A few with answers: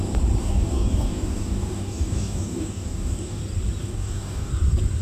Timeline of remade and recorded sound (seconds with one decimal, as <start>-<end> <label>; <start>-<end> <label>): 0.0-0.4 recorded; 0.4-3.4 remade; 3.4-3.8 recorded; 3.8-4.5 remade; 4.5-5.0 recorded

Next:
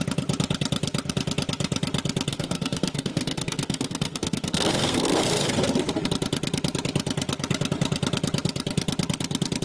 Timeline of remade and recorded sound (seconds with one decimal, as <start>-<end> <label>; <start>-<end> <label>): 0.0-2.3 recorded; 2.3-5.5 remade; 5.5-9.6 recorded

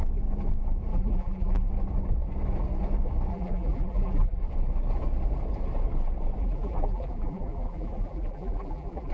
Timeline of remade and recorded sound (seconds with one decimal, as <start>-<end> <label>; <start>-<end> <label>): 0.0-0.9 recorded; 0.9-1.7 remade; 1.7-3.3 recorded; 3.3-4.4 remade; 4.4-6.4 recorded; 6.4-9.1 remade

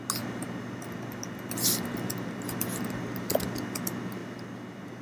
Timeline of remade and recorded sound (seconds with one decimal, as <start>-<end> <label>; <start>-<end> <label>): 0.0-5.0 recorded

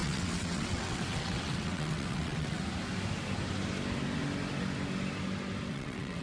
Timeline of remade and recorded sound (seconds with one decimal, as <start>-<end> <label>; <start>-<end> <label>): 0.0-2.6 remade; 2.6-5.7 recorded; 5.7-6.2 remade

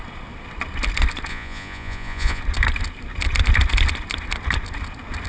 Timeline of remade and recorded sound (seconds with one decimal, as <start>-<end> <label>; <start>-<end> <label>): 0.0-1.3 recorded; 1.3-2.4 remade; 2.4-5.3 recorded